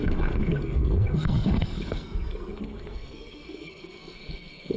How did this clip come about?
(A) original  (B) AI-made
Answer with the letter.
B